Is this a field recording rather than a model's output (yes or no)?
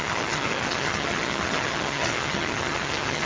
no